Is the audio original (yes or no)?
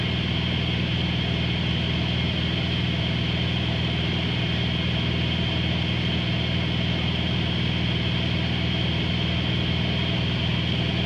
yes